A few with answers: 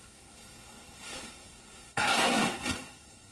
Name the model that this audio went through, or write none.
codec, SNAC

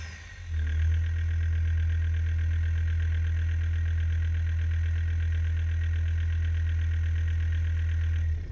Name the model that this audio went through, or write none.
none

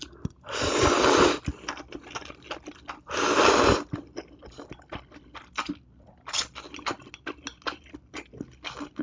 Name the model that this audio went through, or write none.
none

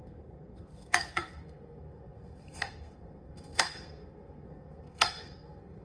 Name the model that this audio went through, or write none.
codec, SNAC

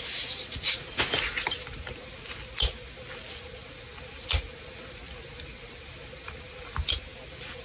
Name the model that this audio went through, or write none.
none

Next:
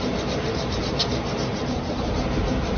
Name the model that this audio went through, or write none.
vocoder, BigVGAN v2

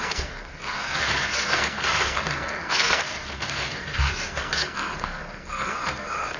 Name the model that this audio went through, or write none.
codec, SNAC